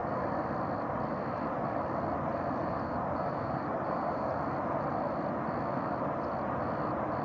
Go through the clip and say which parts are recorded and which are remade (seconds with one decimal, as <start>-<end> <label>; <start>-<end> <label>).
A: 0.0-2.6 recorded; 2.6-4.3 remade; 4.3-7.2 recorded